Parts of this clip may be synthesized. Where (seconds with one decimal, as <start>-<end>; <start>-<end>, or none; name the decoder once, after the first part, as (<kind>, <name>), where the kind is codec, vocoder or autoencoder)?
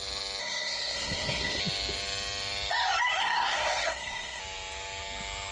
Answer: 0.4-1.6 (codec, SNAC); 3.2-4.4